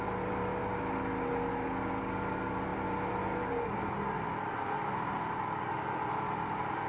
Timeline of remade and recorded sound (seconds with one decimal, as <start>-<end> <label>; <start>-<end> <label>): 0.0-6.9 recorded